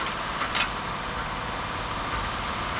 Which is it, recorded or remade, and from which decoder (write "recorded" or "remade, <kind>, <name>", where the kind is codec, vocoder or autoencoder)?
recorded